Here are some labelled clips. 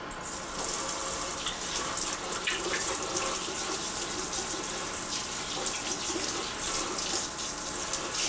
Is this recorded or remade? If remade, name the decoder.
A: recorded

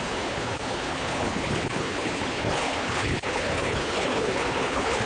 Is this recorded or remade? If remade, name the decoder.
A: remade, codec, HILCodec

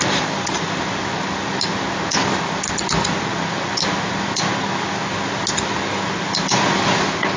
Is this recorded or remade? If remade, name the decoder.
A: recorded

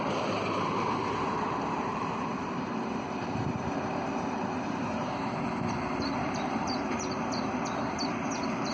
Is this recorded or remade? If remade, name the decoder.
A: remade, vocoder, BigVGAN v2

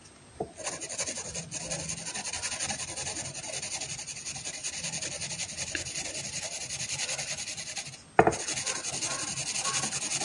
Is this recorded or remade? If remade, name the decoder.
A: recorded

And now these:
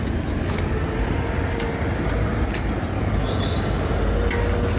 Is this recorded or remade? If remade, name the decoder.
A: recorded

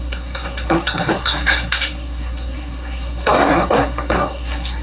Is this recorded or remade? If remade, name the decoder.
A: remade, codec, SNAC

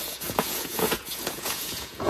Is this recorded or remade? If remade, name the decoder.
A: remade, vocoder, Vocos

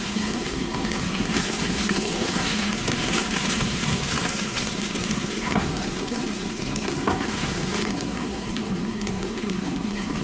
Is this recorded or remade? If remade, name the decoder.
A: remade, codec, SNAC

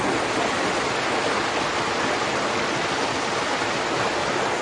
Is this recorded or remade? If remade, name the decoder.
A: recorded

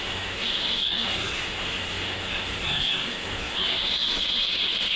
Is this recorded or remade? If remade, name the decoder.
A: remade, codec, SNAC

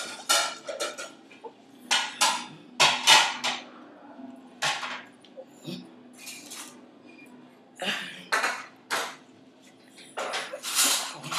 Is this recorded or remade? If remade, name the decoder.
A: recorded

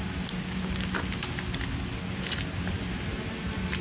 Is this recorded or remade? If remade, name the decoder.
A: recorded